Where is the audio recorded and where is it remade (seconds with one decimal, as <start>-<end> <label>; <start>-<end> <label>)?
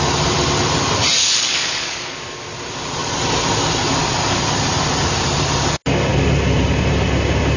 0.0-1.2 recorded; 1.2-2.4 remade; 2.4-7.6 recorded